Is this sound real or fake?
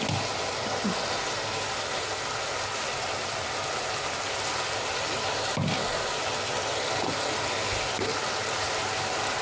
real